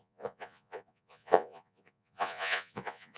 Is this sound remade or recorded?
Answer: remade